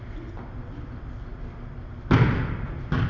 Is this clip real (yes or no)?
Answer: yes